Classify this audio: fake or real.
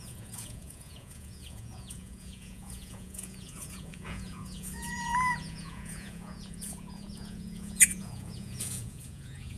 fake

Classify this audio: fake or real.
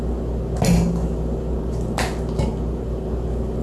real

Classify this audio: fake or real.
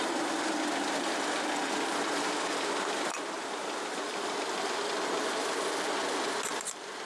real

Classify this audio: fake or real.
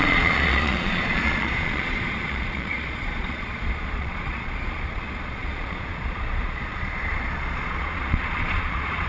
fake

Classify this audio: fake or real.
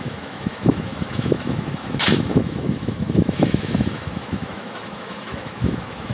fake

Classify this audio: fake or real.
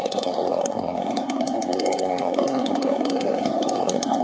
fake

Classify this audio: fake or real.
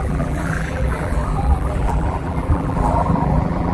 fake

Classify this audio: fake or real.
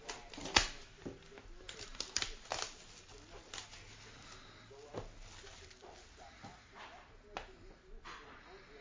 real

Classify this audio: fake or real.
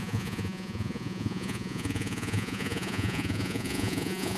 fake